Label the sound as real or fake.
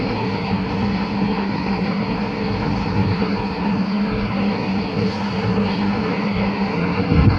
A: fake